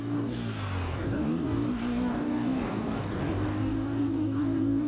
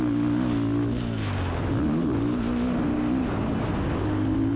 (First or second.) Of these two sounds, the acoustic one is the second